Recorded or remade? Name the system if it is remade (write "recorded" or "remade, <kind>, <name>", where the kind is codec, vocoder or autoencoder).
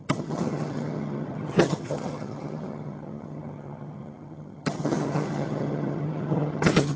remade, vocoder, HiFi-GAN